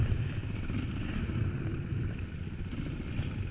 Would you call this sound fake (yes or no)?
no